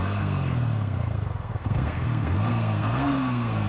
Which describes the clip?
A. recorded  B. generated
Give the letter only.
B